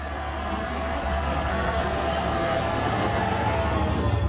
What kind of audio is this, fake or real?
fake